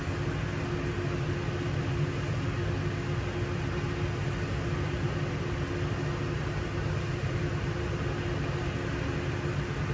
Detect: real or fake real